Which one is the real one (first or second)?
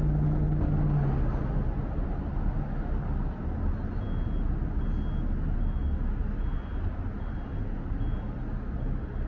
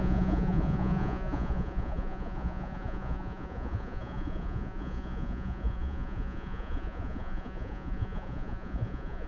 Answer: first